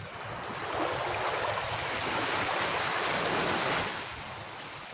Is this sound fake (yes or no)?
no